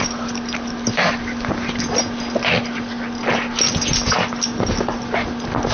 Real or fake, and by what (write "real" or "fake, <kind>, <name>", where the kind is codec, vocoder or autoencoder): real